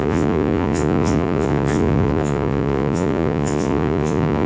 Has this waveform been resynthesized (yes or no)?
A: yes